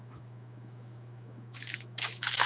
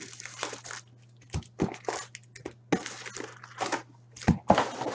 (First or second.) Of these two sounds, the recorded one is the second